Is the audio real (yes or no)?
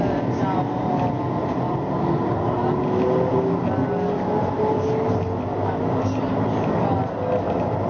yes